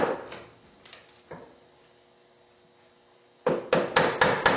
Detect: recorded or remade recorded